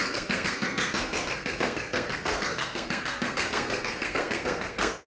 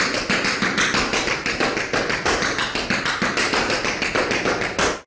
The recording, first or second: second